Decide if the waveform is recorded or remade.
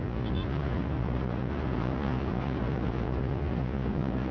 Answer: remade